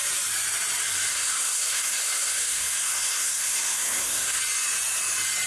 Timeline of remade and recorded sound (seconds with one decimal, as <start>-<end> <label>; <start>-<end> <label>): 0.0-1.1 recorded; 1.1-4.4 remade; 4.4-5.5 recorded